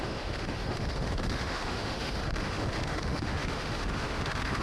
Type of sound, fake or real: fake